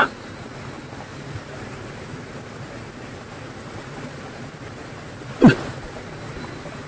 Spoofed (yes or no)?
no